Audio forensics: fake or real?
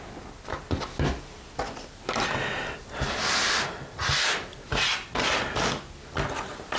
real